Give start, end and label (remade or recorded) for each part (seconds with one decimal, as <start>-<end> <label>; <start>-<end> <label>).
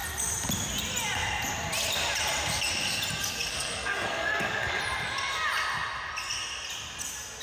0.0-3.5 recorded; 3.5-4.8 remade; 4.8-7.4 recorded